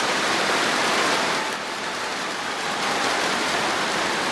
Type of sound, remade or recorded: remade